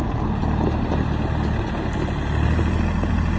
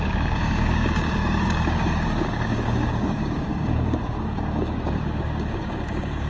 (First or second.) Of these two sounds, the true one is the first